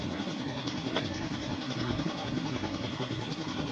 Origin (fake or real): fake